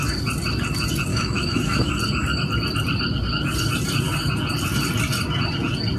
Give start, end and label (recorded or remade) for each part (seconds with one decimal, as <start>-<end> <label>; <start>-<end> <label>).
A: 0.0-1.1 recorded; 1.1-1.9 remade; 1.9-6.0 recorded